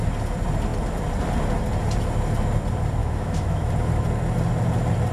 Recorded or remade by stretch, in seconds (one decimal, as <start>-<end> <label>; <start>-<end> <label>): 0.0-3.0 recorded; 3.0-3.7 remade; 3.7-5.1 recorded